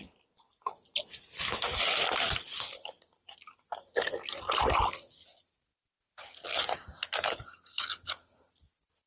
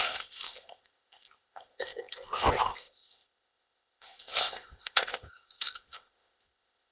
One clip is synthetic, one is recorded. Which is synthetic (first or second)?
second